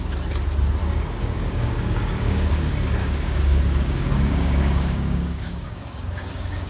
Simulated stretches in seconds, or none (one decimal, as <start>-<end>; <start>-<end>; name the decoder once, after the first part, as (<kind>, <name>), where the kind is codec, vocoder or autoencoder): 0.8-2.5 (codec, DAC); 3.0-6.7